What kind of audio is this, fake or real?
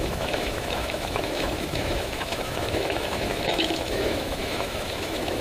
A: fake